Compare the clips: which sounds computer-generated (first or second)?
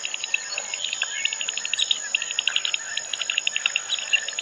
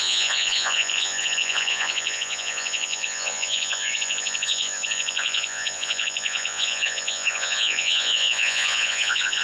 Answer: second